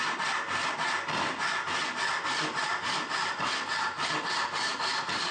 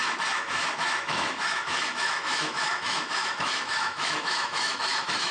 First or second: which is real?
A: first